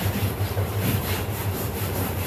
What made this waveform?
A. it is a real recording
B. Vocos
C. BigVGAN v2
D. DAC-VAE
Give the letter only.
C